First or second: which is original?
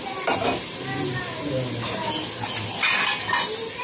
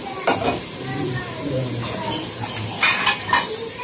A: first